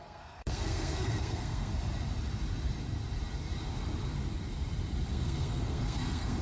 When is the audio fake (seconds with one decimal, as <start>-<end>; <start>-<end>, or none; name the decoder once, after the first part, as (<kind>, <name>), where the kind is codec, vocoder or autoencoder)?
0.0-1.7 (codec, SNAC); 5.1-6.4

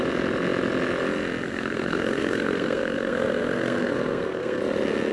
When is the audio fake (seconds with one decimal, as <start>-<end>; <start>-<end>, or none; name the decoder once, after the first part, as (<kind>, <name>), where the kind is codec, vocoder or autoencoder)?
1.5-4.6 (codec, SNAC)

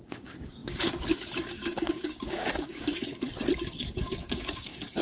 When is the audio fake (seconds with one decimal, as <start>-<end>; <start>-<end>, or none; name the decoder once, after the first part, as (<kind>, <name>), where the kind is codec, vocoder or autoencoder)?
0.0-3.1 (codec, DAC); 3.6-5.0

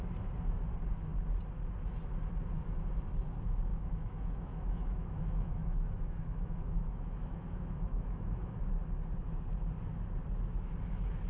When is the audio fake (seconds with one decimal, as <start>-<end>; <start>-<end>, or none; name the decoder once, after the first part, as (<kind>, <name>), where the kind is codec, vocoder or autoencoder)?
3.7-8.7 (autoencoder, DAC-VAE)

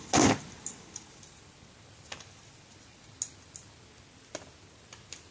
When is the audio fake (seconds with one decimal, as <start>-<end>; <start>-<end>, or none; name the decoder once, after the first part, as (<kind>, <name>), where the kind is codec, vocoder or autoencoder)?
none

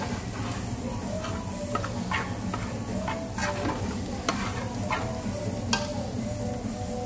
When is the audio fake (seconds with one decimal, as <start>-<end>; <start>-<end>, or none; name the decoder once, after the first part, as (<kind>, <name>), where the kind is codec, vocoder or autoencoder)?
none

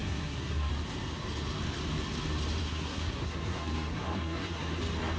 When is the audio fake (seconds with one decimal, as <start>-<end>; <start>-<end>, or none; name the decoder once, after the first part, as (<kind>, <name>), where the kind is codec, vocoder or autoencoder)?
0.0-0.7 (codec, SNAC); 2.6-4.8

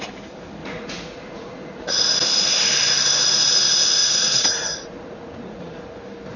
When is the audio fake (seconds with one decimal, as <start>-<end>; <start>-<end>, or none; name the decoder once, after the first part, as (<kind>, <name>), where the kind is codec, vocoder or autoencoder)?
0.6-1.9 (vocoder, Vocos); 4.0-5.8